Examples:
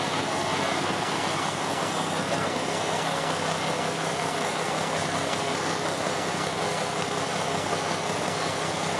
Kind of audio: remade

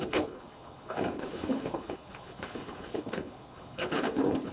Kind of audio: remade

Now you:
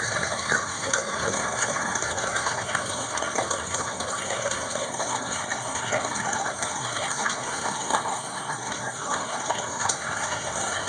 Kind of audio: remade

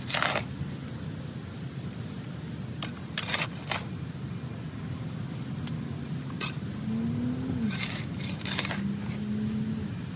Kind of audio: recorded